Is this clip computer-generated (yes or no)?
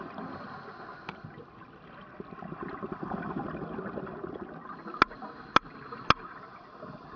no